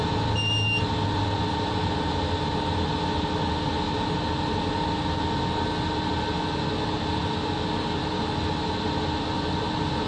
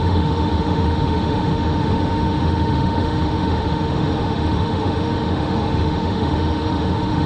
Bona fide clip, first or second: first